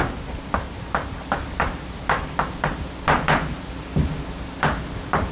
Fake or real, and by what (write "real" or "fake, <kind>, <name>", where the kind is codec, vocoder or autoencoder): real